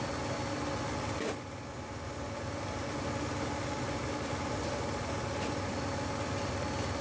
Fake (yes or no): no